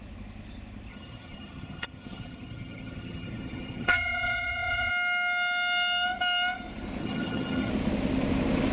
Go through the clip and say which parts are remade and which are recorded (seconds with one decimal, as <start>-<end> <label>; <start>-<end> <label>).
0.0-0.9 recorded; 0.9-4.9 remade; 4.9-7.0 recorded; 7.0-7.7 remade; 7.7-8.7 recorded